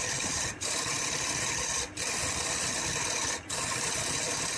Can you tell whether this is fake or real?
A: real